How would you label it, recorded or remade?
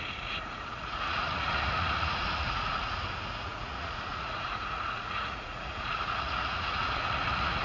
remade